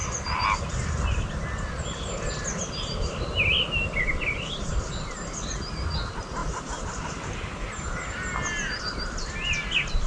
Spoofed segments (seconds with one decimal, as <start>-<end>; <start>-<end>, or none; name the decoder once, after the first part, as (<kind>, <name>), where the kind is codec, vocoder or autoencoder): none